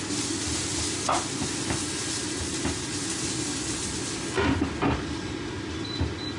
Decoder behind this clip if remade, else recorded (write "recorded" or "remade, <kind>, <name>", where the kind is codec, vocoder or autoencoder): recorded